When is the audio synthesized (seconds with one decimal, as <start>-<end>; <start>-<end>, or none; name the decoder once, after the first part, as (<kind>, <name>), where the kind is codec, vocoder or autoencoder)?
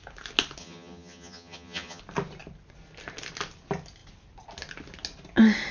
0.6-2.0 (vocoder, HiFi-GAN)